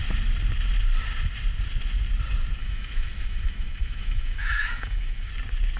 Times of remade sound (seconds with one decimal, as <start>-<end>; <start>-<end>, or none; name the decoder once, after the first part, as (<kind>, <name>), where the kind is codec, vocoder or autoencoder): 2.6-5.3 (autoencoder, DAC-VAE)